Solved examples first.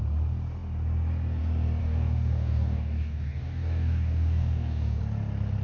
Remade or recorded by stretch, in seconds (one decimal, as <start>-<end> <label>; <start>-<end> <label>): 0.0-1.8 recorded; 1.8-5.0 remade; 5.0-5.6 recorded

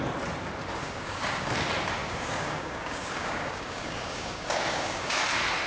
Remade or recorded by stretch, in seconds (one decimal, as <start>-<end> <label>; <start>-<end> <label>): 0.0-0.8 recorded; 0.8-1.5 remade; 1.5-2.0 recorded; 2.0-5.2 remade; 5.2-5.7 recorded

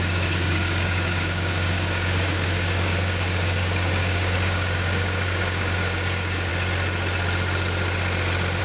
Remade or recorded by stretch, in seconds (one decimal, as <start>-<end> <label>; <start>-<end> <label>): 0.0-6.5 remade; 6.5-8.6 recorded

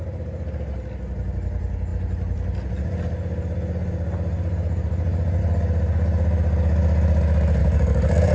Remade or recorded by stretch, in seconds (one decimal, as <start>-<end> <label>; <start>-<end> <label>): 0.0-7.6 recorded; 7.6-8.3 remade

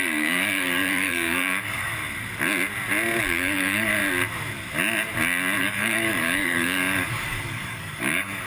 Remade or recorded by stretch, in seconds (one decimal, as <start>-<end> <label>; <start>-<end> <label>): 0.0-1.9 remade; 1.9-3.2 recorded; 3.2-4.0 remade; 4.0-5.6 recorded; 5.6-8.5 remade

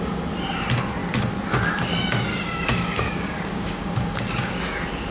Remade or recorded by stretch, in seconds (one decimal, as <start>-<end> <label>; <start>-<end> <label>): 0.0-2.3 recorded; 2.3-4.6 remade; 4.6-5.1 recorded

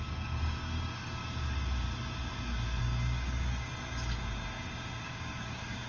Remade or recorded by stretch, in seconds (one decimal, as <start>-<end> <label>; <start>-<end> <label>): 0.0-1.2 remade; 1.2-2.8 recorded; 2.8-3.7 remade; 3.7-5.0 recorded; 5.0-5.9 remade